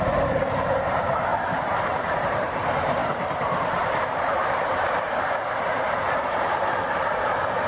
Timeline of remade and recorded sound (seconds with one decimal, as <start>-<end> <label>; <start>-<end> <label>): 0.0-1.3 remade; 1.3-2.2 recorded; 2.2-7.7 remade